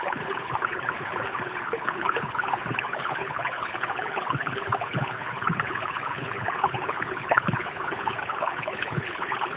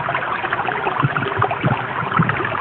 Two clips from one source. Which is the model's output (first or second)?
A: first